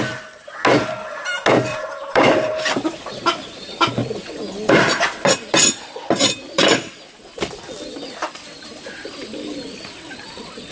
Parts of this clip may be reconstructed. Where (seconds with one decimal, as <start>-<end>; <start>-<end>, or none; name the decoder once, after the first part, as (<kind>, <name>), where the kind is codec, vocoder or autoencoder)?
1.7-3.2 (vocoder, BigVGAN v2); 4.0-6.7; 8.2-9.9